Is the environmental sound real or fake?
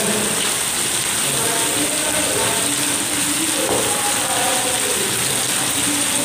real